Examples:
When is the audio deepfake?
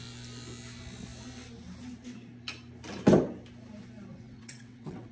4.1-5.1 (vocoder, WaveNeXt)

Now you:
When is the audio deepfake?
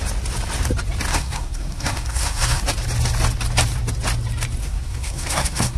1.1-2.6 (codec, SNAC); 4.6-5.8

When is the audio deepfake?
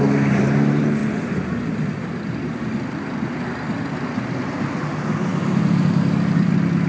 none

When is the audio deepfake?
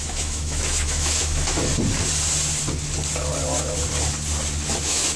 0.0-1.7 (autoencoder, DAC-VAE); 4.8-5.2